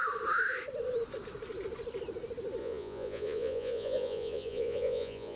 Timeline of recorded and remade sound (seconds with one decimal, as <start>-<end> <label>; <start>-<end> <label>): 0.0-2.6 recorded; 2.6-5.4 remade